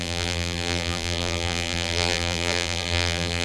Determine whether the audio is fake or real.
fake